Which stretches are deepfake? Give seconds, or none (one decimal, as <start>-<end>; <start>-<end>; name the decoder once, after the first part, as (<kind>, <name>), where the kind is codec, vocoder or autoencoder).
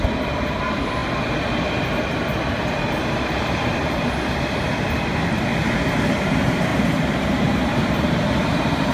0.0-1.0 (vocoder, BigVGAN v2); 4.9-5.5; 6.0-8.9